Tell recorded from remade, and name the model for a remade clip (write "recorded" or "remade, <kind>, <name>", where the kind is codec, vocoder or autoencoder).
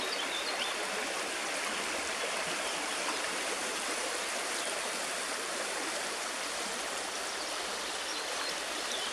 remade, vocoder, BigVGAN v2